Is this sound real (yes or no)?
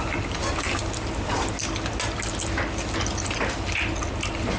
yes